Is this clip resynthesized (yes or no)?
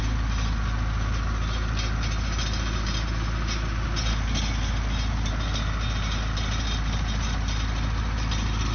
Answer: no